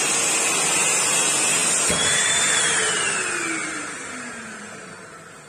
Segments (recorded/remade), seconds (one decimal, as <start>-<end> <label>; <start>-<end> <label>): 0.0-5.5 recorded